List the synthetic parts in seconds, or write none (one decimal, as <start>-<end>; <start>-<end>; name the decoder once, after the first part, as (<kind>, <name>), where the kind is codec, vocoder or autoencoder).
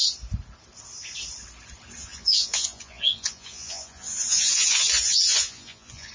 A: 2.0-6.1 (vocoder, Vocos)